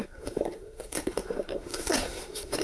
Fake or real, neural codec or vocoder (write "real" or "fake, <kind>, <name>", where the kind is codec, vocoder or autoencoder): fake, codec, SNAC